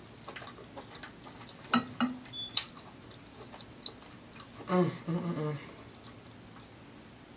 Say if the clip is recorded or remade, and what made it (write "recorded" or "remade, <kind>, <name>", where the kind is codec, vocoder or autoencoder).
recorded